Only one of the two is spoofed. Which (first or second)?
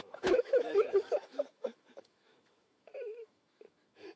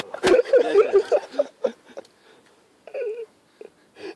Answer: first